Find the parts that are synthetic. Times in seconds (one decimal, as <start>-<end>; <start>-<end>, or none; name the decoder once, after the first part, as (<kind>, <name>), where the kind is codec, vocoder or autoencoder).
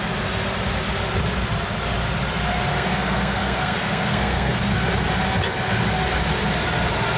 2.7-4.6 (codec, SNAC)